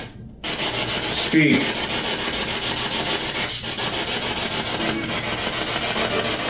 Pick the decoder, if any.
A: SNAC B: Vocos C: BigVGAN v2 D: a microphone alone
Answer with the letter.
D